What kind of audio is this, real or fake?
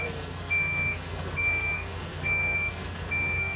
fake